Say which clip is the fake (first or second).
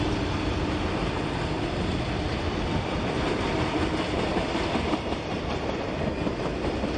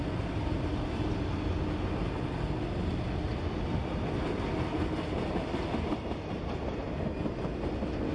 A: first